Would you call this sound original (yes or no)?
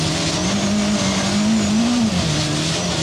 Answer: yes